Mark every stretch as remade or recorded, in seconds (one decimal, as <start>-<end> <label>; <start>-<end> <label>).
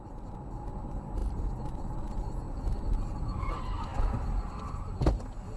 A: 0.0-5.6 recorded